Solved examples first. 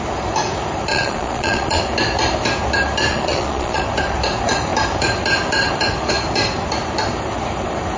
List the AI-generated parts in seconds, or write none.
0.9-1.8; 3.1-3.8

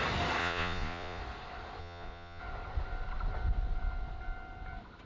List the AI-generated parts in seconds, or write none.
0.4-1.2; 1.8-2.4